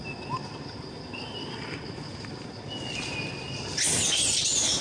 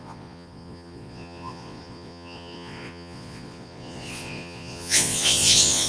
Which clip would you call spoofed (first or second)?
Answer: second